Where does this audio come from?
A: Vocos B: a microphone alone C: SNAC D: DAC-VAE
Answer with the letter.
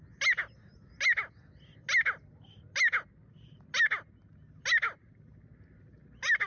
B